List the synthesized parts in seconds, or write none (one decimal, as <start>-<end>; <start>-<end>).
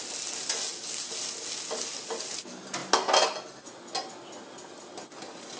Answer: none